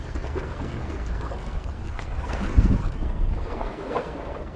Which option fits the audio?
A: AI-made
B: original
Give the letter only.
A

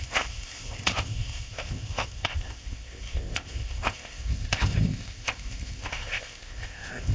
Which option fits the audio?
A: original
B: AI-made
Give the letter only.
B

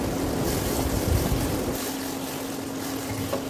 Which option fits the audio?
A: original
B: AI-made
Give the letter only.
A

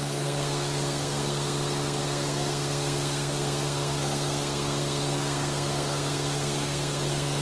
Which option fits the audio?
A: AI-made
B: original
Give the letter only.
A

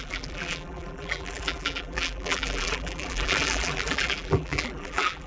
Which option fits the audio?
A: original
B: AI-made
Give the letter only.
B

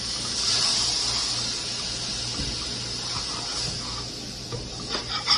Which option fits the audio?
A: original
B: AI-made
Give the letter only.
A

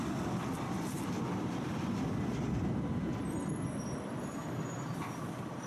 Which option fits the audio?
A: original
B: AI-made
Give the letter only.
B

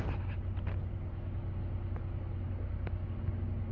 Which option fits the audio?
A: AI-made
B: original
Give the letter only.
B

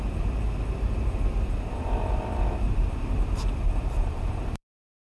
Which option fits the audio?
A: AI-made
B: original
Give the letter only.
A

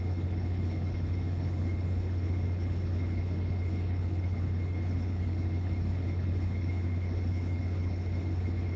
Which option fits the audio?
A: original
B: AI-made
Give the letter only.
B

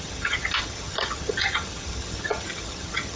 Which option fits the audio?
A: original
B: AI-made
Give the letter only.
B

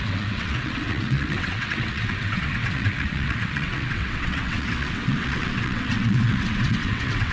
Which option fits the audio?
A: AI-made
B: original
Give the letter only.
A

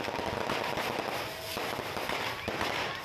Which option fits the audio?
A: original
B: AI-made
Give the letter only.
A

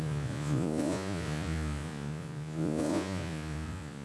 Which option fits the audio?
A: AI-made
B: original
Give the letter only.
A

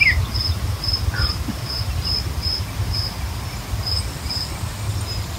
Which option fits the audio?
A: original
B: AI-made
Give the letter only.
A